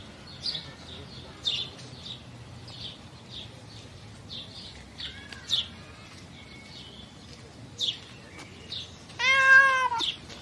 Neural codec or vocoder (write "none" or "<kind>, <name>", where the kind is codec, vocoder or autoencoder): none